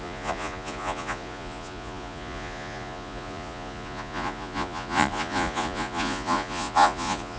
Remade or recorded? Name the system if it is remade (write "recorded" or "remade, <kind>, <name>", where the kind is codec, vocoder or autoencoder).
remade, vocoder, Vocos